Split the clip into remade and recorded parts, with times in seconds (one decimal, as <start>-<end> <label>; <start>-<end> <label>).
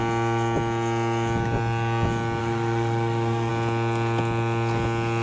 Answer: 0.0-2.4 recorded; 2.4-3.5 remade; 3.5-5.2 recorded